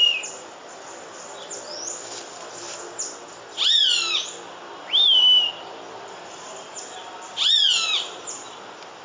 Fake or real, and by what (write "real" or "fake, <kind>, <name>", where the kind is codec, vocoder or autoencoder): real